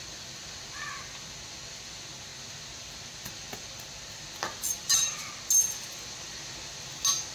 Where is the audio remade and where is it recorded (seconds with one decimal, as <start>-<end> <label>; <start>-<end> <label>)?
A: 0.0-7.3 recorded